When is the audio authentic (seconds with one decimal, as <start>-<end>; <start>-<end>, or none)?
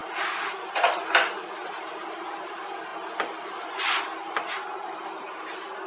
0.0-5.9